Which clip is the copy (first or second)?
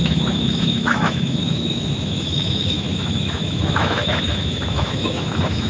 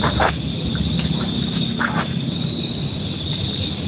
first